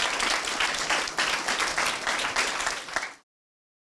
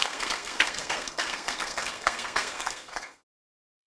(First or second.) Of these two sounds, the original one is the first